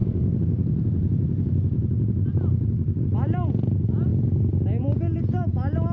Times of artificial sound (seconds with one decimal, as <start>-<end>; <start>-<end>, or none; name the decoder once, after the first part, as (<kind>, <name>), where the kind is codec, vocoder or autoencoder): none